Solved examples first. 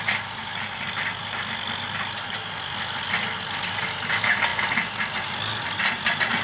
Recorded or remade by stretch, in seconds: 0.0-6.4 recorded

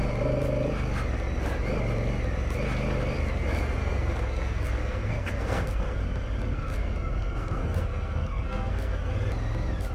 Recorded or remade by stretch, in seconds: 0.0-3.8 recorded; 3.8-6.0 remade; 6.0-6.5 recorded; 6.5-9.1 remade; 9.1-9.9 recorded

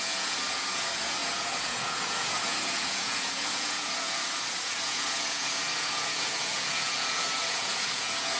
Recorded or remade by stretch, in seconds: 0.0-8.4 remade

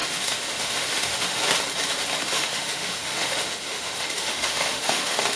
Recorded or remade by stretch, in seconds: 0.0-1.4 remade; 1.4-2.2 recorded; 2.2-5.4 remade

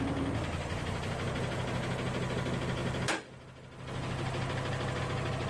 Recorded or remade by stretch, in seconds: 0.0-5.5 recorded

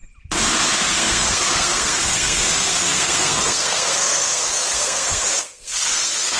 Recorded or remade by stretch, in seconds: 0.0-0.9 recorded; 0.9-6.4 remade

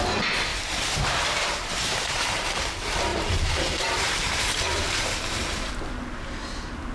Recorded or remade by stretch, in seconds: 0.0-0.5 recorded; 0.5-2.6 remade; 2.6-3.1 recorded; 3.1-5.7 remade; 5.7-6.9 recorded